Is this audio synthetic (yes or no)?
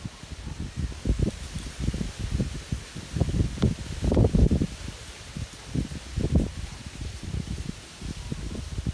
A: no